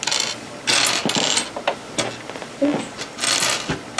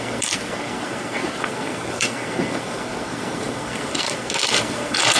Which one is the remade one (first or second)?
second